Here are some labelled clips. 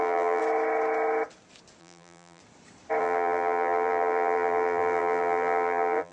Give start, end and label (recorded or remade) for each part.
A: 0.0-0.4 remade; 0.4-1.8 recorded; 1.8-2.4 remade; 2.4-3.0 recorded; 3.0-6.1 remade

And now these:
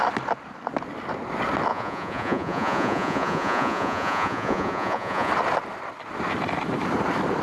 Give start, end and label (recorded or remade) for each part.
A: 0.0-1.7 recorded; 1.7-5.3 remade; 5.3-7.4 recorded